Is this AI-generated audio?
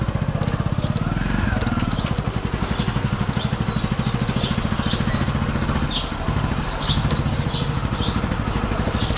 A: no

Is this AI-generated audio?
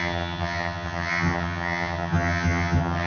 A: yes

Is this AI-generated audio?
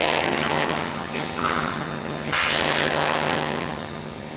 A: yes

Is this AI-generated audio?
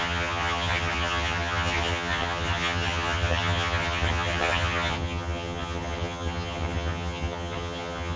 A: yes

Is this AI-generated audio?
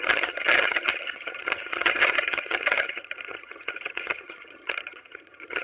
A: yes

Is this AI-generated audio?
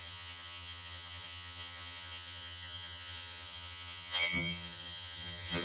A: yes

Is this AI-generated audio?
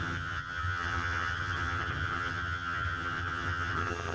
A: yes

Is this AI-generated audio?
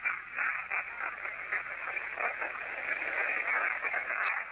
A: no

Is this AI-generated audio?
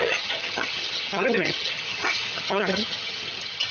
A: yes